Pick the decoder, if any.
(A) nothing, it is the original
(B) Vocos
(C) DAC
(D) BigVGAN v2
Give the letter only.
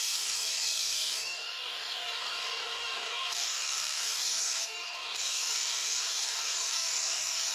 C